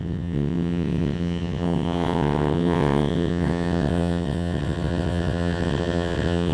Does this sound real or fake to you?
fake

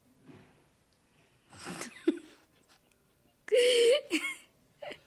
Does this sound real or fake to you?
real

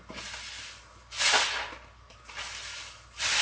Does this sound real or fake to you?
real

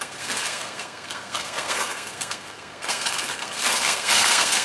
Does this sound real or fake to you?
fake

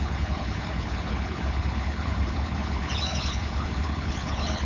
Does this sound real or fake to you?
fake